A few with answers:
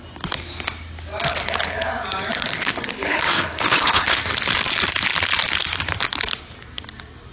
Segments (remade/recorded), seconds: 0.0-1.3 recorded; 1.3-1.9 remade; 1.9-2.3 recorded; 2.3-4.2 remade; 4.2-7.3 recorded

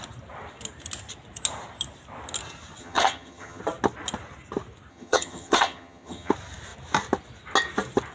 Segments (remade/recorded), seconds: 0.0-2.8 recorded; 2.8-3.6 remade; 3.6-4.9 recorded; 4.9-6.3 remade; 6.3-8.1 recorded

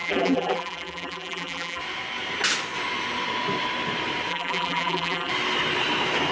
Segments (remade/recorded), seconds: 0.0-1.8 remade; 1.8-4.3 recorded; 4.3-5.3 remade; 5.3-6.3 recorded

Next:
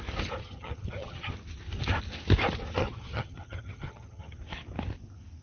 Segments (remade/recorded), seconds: 0.0-0.4 recorded; 0.4-1.3 remade; 1.3-2.8 recorded; 2.8-4.4 remade; 4.4-5.4 recorded

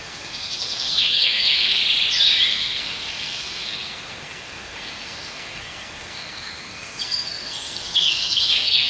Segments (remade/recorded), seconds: 0.0-1.8 remade; 1.8-2.5 recorded; 2.5-8.9 remade

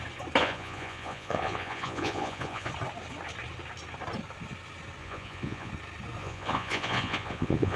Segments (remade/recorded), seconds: 0.0-0.4 recorded; 0.4-2.7 remade; 2.7-5.0 recorded; 5.0-5.7 remade; 5.7-6.2 recorded; 6.2-7.8 remade

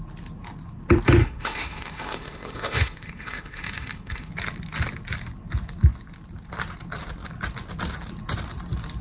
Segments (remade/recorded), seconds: 0.0-1.2 recorded; 1.2-4.3 remade; 4.3-9.0 recorded

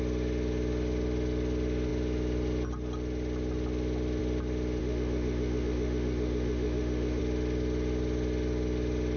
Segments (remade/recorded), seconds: 0.0-4.8 recorded; 4.8-7.2 remade; 7.2-9.2 recorded